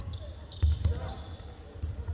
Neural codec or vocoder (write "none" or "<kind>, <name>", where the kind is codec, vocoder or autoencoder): none